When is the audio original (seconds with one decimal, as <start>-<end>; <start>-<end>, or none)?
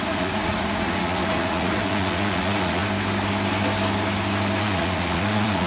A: 2.8-4.6